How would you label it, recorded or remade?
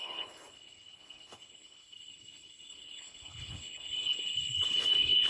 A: remade